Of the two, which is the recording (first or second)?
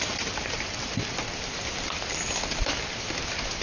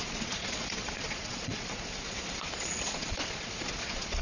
first